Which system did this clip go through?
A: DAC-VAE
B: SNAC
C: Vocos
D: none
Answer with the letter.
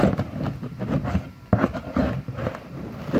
D